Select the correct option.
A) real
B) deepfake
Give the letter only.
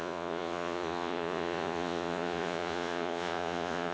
B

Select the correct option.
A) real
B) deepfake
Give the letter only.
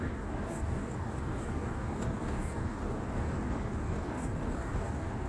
B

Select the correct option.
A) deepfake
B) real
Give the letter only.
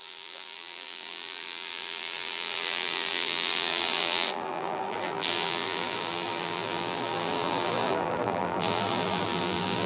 A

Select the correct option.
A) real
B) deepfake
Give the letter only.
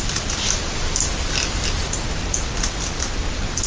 A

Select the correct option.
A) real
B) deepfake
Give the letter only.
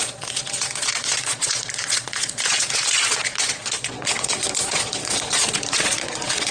B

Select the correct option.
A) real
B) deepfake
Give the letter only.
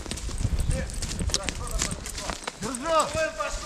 A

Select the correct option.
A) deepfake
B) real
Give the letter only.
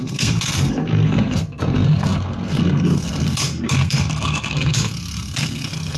A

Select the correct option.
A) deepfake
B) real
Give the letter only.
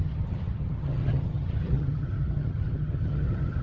A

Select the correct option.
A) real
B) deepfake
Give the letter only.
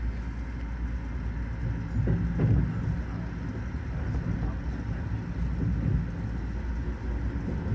A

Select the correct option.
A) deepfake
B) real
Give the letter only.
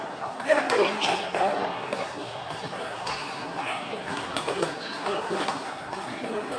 A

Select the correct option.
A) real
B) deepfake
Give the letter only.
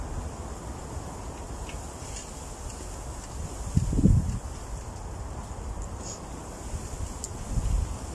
A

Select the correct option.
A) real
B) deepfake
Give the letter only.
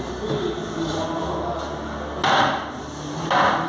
A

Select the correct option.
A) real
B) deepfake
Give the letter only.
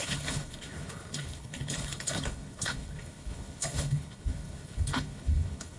B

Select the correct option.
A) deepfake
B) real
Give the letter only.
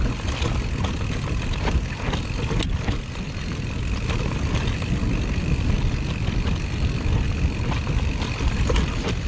B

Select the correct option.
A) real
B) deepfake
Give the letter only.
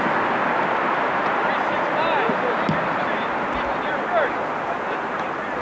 A